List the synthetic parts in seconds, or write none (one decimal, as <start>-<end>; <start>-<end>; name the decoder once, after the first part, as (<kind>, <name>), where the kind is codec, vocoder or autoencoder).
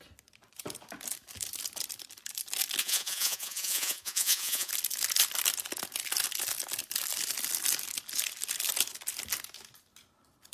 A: 2.8-4.7 (vocoder, Vocos)